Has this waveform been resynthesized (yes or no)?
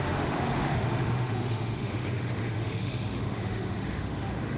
yes